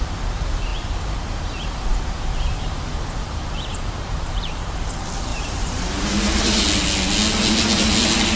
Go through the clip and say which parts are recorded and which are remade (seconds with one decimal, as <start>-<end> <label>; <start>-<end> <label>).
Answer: 0.0-0.7 recorded; 0.7-1.4 remade; 1.4-1.9 recorded; 1.9-4.8 remade; 4.8-5.3 recorded; 5.3-6.6 remade; 6.6-8.4 recorded